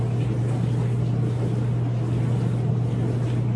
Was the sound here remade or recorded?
recorded